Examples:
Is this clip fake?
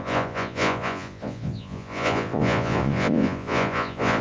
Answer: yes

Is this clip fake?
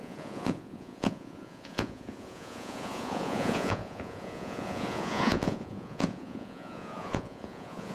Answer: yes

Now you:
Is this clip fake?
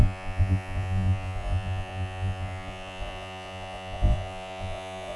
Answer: yes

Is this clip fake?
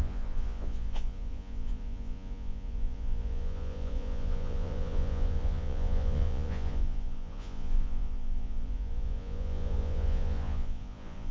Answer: yes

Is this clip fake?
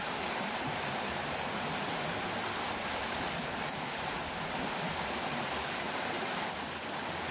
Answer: no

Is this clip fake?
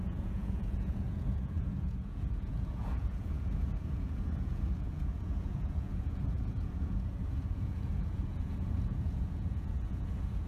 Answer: yes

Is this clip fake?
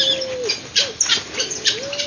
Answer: no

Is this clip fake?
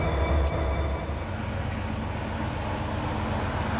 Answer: no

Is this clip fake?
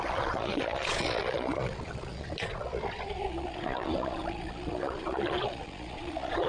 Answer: yes